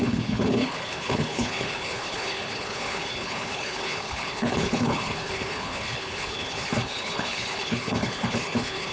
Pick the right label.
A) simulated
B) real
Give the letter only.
A